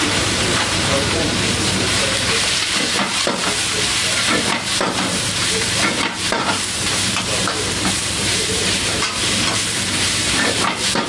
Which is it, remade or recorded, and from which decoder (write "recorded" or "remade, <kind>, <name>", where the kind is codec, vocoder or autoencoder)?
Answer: remade, vocoder, BigVGAN v2